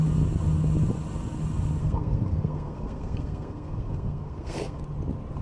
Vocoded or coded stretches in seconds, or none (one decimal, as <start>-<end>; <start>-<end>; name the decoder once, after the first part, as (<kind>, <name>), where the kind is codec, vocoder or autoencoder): 1.8-4.8 (codec, SNAC)